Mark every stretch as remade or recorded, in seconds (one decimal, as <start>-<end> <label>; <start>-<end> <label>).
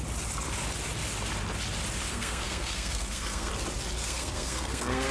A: 0.0-2.1 recorded; 2.1-3.5 remade; 3.5-4.0 recorded; 4.0-5.1 remade